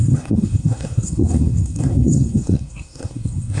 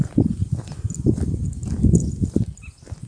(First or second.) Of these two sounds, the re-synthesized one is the first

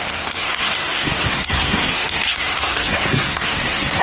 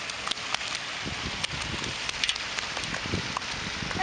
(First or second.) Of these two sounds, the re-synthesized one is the first